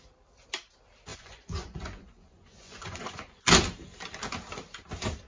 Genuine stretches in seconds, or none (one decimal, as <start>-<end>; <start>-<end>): 0.0-1.1; 3.4-5.3